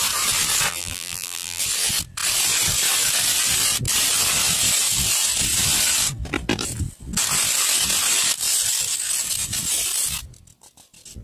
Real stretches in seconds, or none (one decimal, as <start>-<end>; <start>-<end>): 0.0-0.7; 1.6-11.2